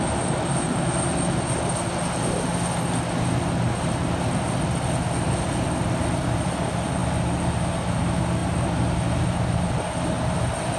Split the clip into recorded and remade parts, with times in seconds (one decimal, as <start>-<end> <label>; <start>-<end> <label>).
0.0-10.8 recorded